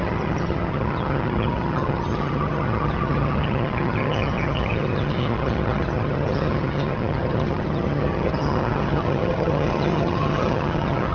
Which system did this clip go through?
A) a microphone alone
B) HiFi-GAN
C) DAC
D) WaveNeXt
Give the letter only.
B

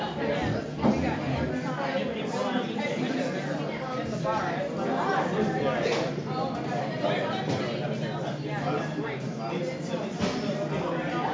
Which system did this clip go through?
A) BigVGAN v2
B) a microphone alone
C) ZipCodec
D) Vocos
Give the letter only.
B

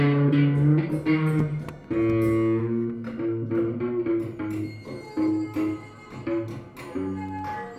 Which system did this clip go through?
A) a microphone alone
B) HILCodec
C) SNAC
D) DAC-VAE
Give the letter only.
A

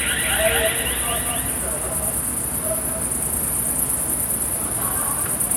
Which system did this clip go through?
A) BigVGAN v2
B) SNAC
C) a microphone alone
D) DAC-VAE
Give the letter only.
C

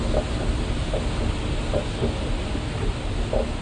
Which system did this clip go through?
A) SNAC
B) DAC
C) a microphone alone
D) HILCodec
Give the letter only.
C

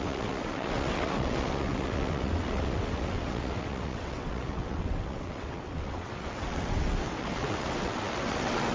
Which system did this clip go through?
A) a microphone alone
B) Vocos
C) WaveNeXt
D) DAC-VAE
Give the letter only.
C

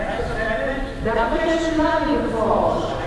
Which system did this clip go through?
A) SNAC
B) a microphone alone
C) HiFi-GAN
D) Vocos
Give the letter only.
B